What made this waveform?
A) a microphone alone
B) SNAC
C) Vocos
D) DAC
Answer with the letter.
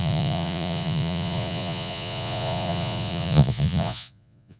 C